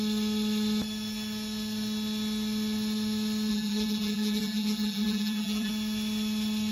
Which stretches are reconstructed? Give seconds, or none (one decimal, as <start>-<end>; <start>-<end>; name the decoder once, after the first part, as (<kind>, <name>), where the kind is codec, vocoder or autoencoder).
3.5-5.7 (vocoder, BigVGAN v2)